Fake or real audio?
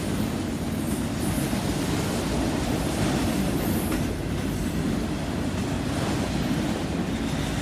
real